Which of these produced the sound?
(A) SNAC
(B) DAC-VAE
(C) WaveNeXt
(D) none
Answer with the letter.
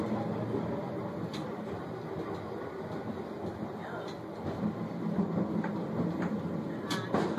D